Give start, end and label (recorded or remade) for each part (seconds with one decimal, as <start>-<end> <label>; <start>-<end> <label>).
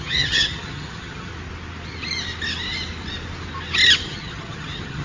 0.0-1.3 remade; 1.3-4.0 recorded; 4.0-5.0 remade